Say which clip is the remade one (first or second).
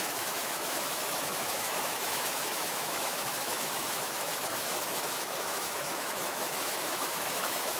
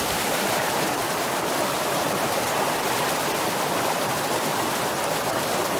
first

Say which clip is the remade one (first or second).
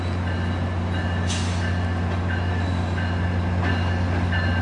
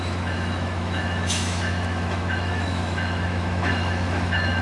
second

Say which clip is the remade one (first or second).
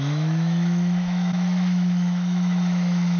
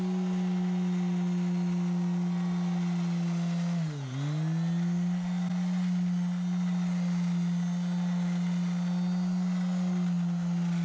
first